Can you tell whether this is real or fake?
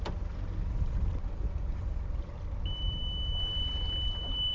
real